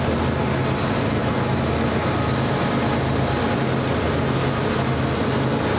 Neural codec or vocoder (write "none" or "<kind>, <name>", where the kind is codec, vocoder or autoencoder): none